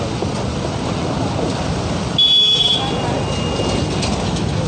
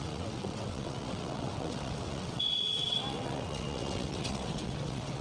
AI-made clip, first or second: second